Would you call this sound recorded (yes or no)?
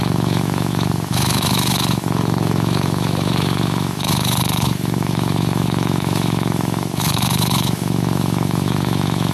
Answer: no